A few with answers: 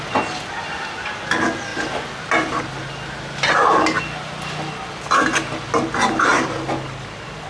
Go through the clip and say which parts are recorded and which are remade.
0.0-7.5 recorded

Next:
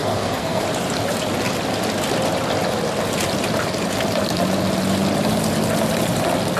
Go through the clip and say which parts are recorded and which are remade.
0.0-0.6 remade; 0.6-6.6 recorded

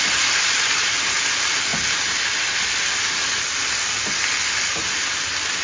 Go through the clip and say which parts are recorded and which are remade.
0.0-5.6 recorded

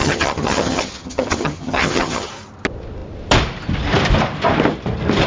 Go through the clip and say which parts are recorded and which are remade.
0.0-2.3 remade; 2.3-5.3 recorded

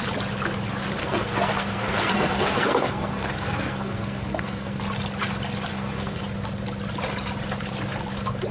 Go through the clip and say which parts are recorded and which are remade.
0.0-1.0 recorded; 1.0-4.8 remade; 4.8-5.7 recorded; 5.7-6.2 remade; 6.2-8.5 recorded

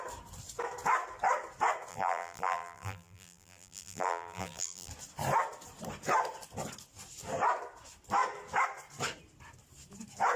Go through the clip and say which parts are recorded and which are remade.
0.0-1.9 recorded; 1.9-4.9 remade; 4.9-10.4 recorded

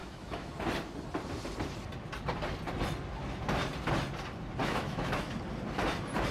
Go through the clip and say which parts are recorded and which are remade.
0.0-0.5 remade; 0.5-4.6 recorded; 4.6-5.3 remade; 5.3-6.3 recorded